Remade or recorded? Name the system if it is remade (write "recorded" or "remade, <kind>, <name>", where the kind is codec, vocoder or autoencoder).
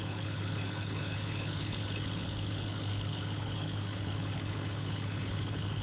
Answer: remade, codec, HILCodec